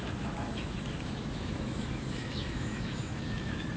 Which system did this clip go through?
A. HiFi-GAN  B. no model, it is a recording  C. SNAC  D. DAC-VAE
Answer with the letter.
D